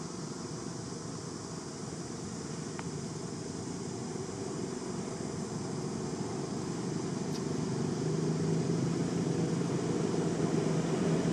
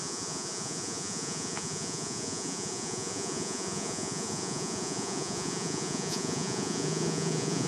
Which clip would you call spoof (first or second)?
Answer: second